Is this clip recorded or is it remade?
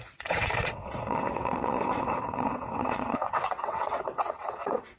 remade